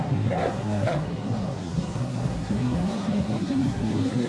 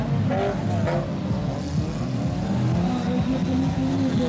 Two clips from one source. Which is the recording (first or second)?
second